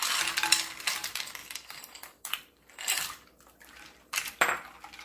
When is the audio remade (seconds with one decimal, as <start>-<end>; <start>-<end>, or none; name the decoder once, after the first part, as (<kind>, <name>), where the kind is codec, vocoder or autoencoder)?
1.4-4.4 (vocoder, BigVGAN v2)